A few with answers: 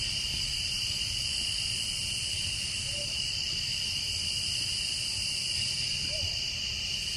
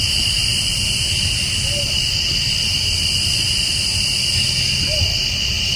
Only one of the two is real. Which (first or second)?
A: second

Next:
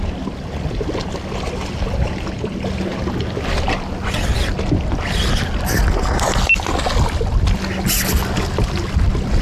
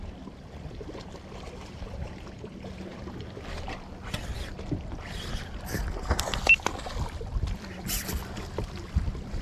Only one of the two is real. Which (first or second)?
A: first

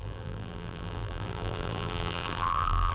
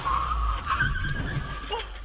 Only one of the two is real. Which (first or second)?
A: second